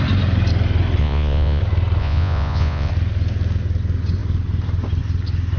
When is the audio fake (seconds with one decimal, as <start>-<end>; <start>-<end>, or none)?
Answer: 1.0-1.6; 2.0-2.9